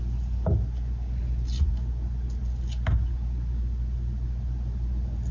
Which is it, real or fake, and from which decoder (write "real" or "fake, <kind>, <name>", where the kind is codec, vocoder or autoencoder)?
real